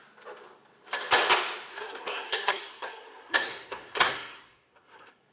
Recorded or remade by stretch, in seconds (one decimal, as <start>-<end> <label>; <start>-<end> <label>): 0.0-1.7 recorded; 1.7-5.3 remade